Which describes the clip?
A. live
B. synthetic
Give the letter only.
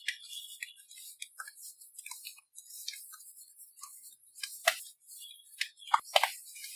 A